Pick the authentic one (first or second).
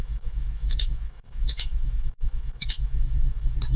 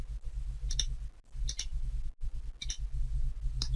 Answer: second